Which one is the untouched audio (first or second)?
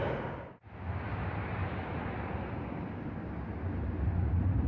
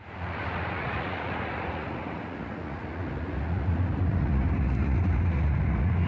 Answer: first